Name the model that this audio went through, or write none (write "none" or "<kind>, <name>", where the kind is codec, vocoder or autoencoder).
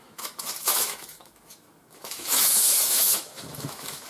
autoencoder, DAC-VAE